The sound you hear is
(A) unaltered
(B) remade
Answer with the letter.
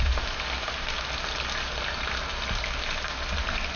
A